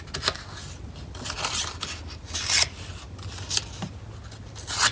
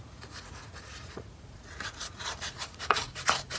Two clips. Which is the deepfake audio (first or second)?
second